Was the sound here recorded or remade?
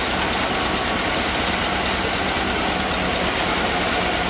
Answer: recorded